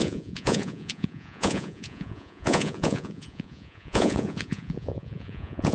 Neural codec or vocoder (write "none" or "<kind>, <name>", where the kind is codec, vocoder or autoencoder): vocoder, Vocos